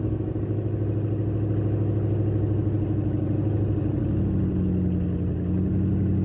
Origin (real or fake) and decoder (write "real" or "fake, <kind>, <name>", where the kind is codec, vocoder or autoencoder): real